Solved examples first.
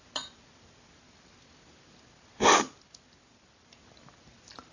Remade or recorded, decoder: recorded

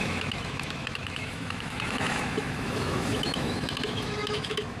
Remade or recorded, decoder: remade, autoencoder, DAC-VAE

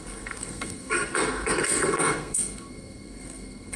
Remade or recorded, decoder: remade, codec, SNAC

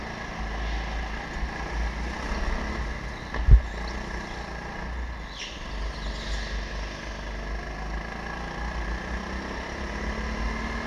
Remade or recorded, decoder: recorded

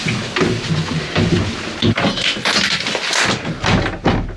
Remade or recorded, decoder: recorded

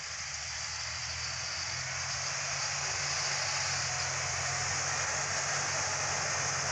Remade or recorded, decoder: recorded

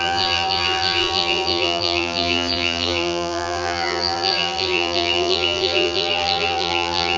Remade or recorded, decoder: remade, vocoder, BigVGAN v2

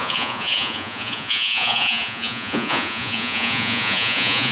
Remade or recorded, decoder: remade, vocoder, Vocos